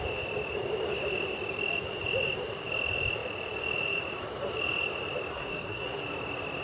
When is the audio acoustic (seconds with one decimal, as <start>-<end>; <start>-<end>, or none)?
0.0-5.3; 6.0-6.6